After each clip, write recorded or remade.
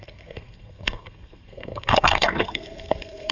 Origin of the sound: remade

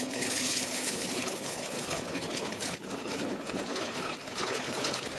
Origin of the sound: remade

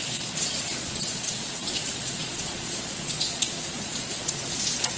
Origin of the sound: remade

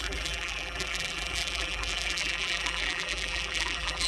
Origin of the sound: remade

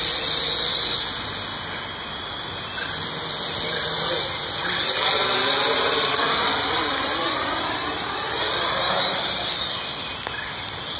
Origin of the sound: recorded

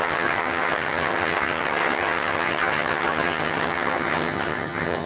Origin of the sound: remade